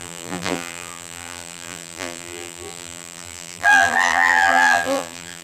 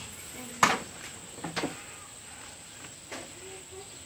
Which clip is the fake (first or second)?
first